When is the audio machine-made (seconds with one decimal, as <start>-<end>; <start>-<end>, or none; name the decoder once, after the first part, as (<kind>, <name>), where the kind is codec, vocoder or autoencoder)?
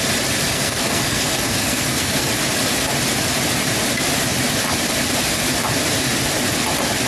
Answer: 0.5-2.3 (codec, SNAC)